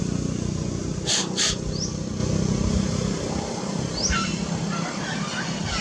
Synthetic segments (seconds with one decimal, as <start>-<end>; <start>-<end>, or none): none